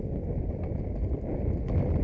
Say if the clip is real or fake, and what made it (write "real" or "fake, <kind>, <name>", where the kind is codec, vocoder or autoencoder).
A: real